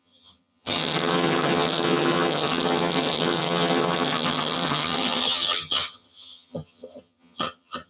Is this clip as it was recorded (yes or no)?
no